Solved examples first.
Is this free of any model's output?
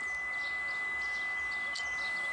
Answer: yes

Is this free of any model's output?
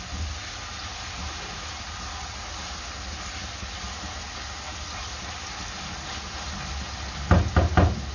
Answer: yes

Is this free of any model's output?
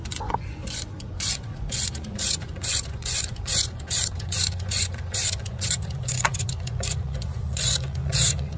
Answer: no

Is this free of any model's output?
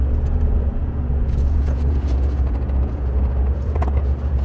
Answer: no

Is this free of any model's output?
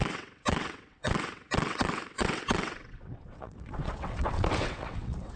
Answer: no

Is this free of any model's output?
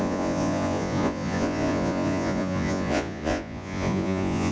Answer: no